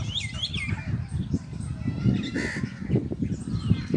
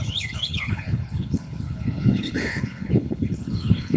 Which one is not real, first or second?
second